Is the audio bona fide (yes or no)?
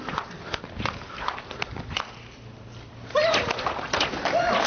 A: yes